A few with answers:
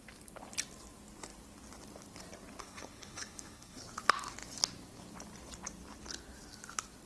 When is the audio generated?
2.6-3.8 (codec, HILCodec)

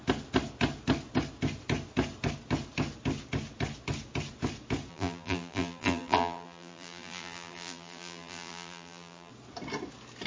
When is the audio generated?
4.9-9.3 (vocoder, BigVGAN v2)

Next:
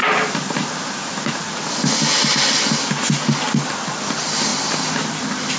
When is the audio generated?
4.5-5.6 (vocoder, BigVGAN v2)

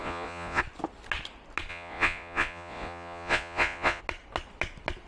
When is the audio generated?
0.0-0.6 (vocoder, Vocos); 1.7-4.0